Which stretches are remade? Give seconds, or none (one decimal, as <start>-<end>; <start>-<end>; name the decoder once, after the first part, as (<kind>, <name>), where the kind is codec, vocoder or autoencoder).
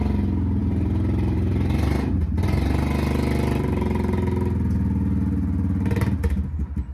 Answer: 0.6-2.1 (vocoder, BigVGAN v2)